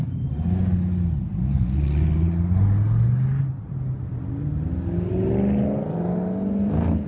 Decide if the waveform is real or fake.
real